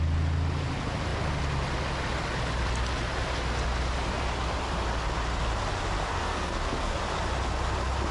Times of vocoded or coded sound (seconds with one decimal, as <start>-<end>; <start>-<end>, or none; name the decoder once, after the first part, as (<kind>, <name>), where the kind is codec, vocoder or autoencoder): 6.1-7.0 (codec, SNAC)